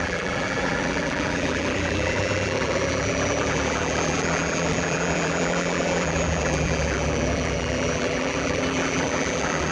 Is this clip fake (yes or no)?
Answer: yes